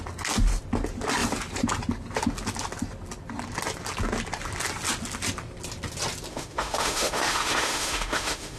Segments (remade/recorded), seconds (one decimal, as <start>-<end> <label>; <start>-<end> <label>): 0.0-6.3 recorded; 6.3-8.6 remade